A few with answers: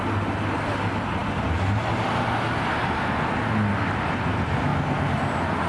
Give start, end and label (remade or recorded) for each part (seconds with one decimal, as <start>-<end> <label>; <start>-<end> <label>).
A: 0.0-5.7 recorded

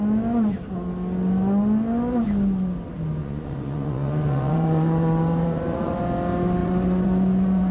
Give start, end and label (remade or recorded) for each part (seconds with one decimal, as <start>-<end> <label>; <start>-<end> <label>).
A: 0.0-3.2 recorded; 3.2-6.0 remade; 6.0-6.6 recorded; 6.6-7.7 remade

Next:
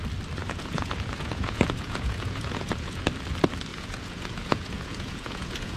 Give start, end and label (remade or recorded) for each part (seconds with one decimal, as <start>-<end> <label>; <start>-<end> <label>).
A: 0.0-0.4 recorded; 0.4-3.0 remade; 3.0-3.7 recorded; 3.7-5.8 remade

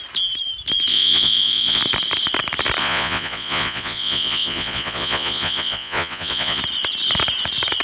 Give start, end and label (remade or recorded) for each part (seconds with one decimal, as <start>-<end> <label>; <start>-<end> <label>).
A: 0.0-0.9 recorded; 0.9-1.8 remade; 1.8-2.8 recorded; 2.8-6.6 remade; 6.6-7.8 recorded

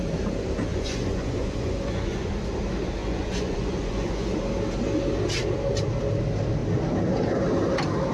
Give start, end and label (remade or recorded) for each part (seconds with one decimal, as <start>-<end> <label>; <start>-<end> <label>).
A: 0.0-0.7 recorded; 0.7-2.3 remade; 2.3-3.0 recorded; 3.0-4.3 remade; 4.3-8.1 recorded

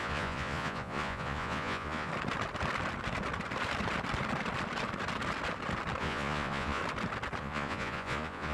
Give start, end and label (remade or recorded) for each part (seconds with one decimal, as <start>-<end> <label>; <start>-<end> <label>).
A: 0.0-2.1 remade; 2.1-6.0 recorded; 6.0-6.8 remade; 6.8-7.4 recorded; 7.4-8.5 remade

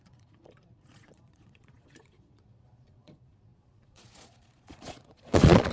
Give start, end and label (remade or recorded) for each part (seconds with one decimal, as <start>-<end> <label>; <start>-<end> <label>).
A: 0.0-5.7 remade